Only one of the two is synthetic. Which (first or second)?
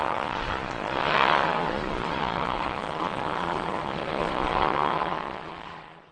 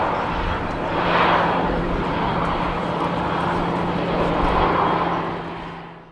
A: first